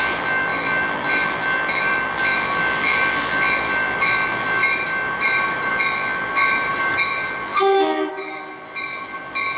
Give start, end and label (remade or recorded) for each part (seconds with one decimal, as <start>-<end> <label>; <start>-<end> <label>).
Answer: 0.0-4.6 remade; 4.6-5.7 recorded; 5.7-6.4 remade; 6.4-7.0 recorded; 7.0-9.6 remade